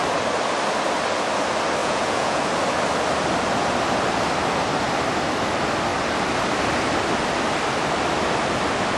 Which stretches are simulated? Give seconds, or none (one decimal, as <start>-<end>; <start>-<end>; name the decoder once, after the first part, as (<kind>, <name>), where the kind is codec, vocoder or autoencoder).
1.8-2.4 (vocoder, Vocos)